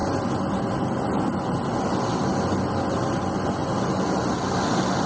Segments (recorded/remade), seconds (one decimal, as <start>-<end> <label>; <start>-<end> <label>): 0.0-5.1 recorded